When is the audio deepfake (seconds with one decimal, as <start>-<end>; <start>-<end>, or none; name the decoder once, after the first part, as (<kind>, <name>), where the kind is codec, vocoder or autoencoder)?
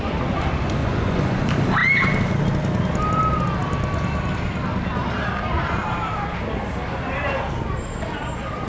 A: 0.8-1.4 (vocoder, Vocos)